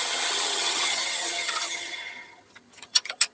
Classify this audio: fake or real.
fake